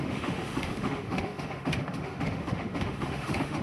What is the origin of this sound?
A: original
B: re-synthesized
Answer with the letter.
B